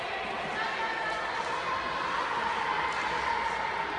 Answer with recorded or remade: recorded